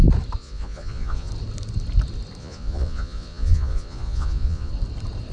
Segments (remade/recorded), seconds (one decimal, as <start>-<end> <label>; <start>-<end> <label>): 0.0-0.4 recorded; 0.4-1.3 remade; 1.3-2.4 recorded; 2.4-4.7 remade; 4.7-5.3 recorded